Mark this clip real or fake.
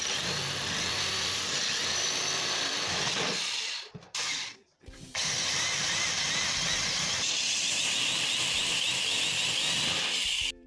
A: fake